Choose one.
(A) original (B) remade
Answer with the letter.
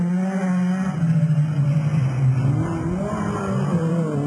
A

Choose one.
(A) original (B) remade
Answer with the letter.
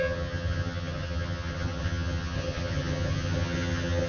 B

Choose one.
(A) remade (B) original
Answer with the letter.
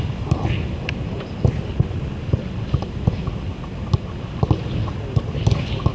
B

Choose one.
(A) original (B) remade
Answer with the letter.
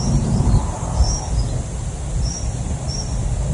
A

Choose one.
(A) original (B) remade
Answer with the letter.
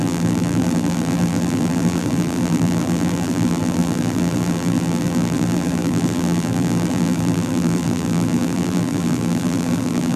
B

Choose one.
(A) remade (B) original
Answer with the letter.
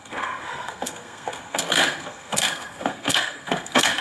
A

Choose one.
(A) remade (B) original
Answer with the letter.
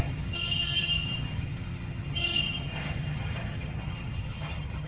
A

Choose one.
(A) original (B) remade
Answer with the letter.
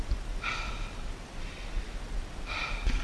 A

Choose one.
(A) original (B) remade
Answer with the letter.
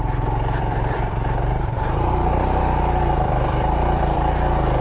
B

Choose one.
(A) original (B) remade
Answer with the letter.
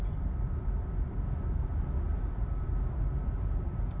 A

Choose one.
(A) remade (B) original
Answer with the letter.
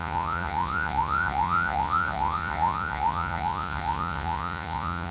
A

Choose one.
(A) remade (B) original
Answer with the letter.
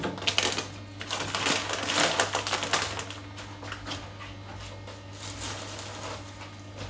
B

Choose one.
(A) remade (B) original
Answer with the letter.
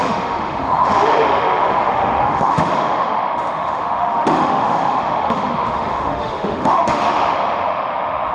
A